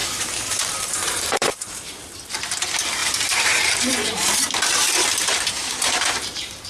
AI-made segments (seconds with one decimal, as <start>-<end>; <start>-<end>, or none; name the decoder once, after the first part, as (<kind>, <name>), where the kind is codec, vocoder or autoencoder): 0.0-2.3 (vocoder, BigVGAN v2); 3.0-6.7